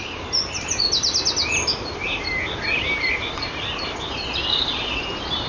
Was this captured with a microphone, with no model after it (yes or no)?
yes